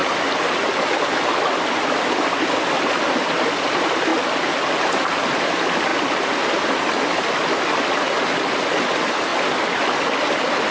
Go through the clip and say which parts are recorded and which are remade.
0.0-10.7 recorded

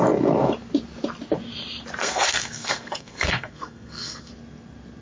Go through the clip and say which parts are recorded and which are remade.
0.0-2.0 recorded; 2.0-4.3 remade; 4.3-5.0 recorded